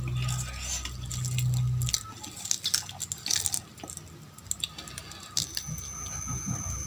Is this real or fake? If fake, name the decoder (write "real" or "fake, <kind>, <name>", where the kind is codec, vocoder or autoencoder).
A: real